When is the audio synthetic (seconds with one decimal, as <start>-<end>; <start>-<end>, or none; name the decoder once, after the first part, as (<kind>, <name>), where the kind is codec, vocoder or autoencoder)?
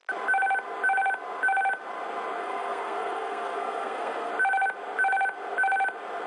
2.4-4.3 (codec, SNAC)